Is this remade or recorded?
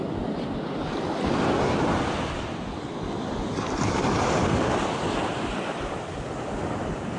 recorded